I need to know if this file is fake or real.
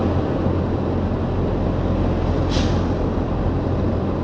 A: real